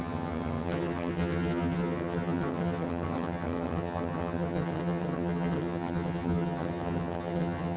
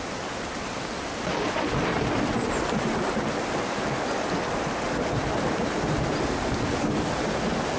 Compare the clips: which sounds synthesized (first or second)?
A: first